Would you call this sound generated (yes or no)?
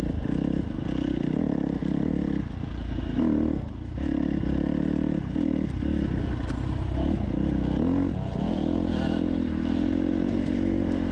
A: no